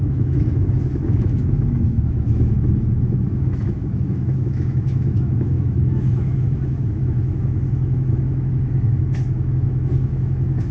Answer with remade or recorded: remade